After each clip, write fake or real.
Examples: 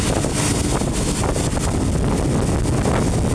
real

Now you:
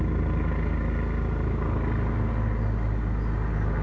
real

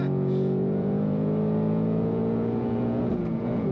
fake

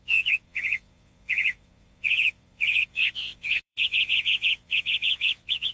fake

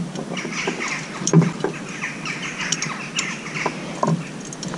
real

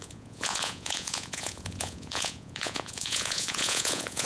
fake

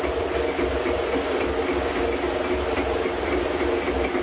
real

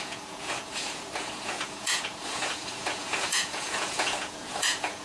fake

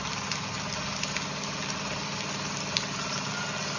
real